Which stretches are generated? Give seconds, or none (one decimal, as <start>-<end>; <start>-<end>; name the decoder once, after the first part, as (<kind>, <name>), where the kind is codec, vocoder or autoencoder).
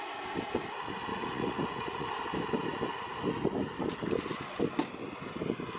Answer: 1.1-2.1 (vocoder, Vocos)